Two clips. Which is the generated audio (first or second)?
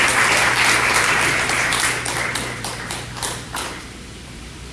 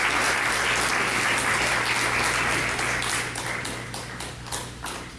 first